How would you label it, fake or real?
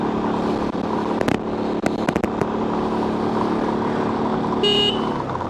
real